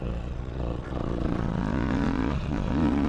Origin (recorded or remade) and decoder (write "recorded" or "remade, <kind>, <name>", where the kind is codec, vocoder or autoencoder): remade, vocoder, Vocos